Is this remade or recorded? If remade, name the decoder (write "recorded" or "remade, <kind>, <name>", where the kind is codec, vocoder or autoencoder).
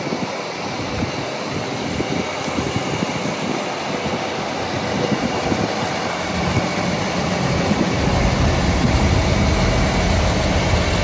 recorded